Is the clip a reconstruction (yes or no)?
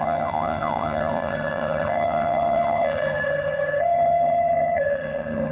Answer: yes